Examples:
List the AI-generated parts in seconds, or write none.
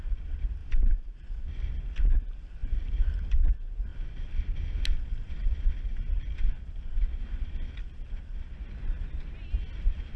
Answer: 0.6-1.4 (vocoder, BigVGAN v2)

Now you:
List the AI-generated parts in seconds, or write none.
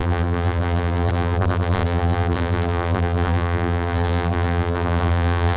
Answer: 0.0-5.6 (vocoder, BigVGAN v2)